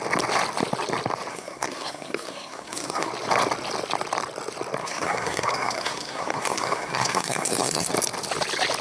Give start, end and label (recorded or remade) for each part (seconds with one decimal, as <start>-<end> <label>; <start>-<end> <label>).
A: 0.0-1.3 recorded; 1.3-3.1 remade; 3.1-4.8 recorded; 4.8-7.9 remade; 7.9-8.8 recorded